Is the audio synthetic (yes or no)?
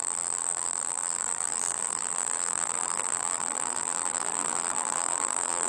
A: yes